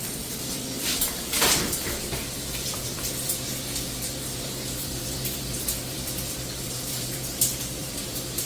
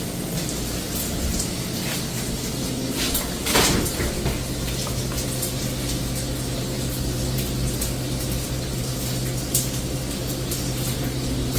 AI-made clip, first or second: first